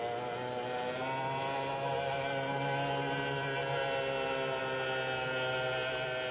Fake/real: real